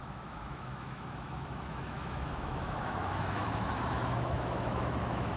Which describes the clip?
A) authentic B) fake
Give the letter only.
B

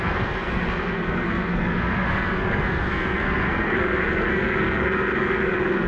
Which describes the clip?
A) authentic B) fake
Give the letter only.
B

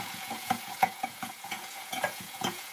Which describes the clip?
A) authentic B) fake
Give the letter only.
B